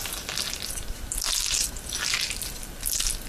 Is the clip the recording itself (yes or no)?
no